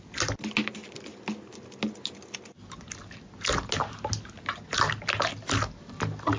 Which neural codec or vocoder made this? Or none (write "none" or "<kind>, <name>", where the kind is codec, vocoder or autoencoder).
none